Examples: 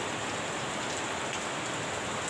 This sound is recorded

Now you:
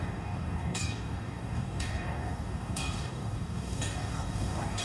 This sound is remade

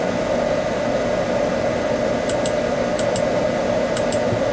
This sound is recorded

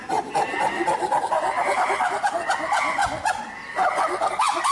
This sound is recorded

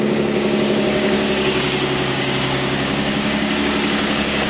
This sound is remade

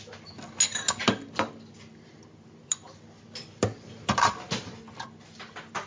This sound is recorded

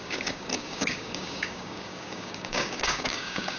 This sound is remade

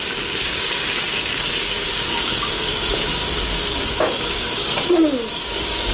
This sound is remade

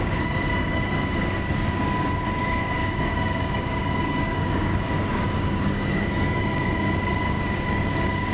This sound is remade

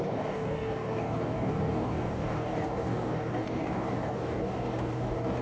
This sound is remade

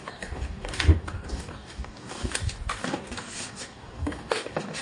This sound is remade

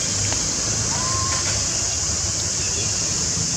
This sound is recorded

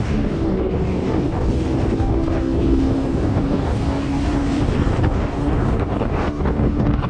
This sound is remade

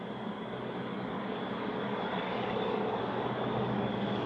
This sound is remade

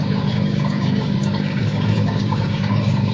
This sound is remade